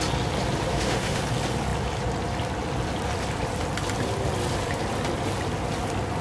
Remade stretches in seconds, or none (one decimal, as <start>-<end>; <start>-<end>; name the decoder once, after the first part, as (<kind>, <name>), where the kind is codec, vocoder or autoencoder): 0.7-1.2 (autoencoder, DAC-VAE)